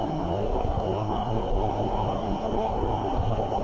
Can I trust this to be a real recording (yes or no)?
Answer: no